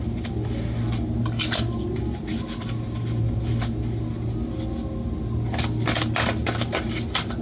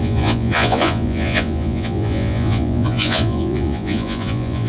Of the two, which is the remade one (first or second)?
second